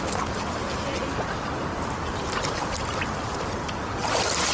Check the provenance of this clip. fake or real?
real